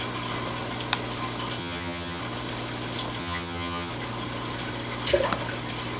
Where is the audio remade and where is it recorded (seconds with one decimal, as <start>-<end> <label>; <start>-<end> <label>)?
0.0-1.6 recorded; 1.6-2.2 remade; 2.2-3.2 recorded; 3.2-3.9 remade; 3.9-6.0 recorded